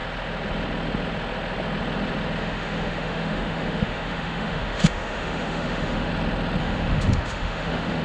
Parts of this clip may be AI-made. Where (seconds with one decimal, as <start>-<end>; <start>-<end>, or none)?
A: 2.4-6.1; 6.6-8.0

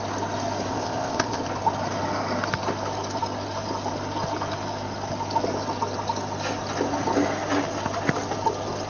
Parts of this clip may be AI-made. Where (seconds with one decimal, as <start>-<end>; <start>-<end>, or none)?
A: 0.7-1.4

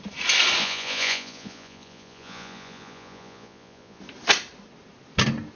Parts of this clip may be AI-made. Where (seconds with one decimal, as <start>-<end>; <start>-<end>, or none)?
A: 0.6-4.0